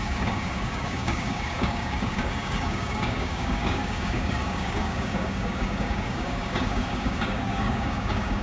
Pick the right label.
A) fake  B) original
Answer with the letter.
A